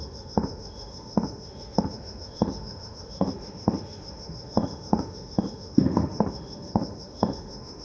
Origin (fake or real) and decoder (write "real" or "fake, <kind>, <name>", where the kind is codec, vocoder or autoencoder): fake, autoencoder, DAC-VAE